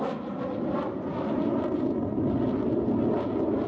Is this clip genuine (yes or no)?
yes